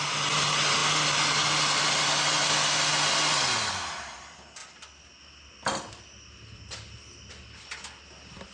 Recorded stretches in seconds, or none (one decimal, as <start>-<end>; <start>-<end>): 0.0-8.5